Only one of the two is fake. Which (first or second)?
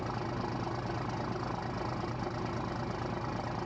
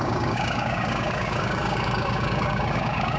second